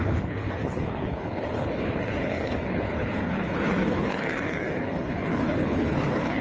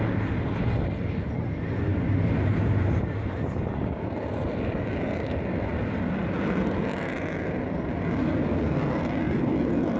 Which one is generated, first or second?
first